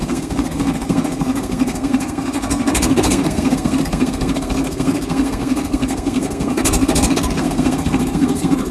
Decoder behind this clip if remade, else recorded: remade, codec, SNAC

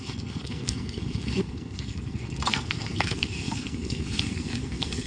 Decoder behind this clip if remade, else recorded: remade, codec, SNAC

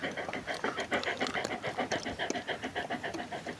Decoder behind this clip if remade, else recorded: recorded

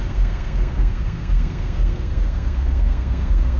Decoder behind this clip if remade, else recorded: remade, codec, SNAC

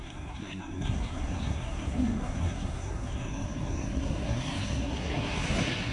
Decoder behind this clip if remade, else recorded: remade, codec, SNAC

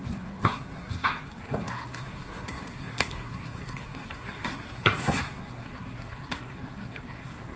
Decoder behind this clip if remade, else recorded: remade, codec, SNAC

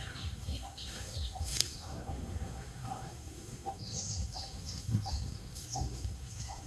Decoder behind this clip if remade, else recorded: remade, codec, SNAC